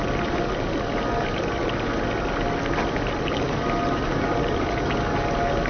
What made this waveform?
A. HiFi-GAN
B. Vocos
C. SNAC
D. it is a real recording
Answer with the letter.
D